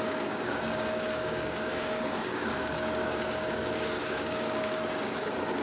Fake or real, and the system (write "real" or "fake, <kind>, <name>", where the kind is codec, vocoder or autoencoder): fake, codec, DAC